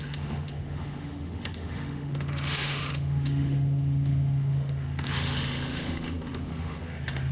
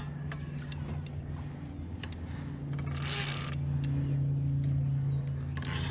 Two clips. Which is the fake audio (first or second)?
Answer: first